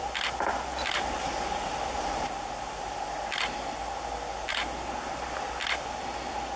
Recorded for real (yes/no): yes